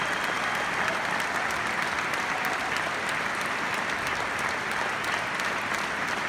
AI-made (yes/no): no